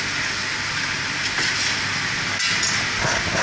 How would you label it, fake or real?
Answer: real